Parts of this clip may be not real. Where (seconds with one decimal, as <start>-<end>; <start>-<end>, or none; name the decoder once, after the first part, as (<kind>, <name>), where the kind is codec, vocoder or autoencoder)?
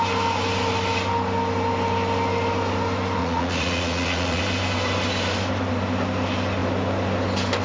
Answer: 3.2-4.4 (vocoder, Vocos)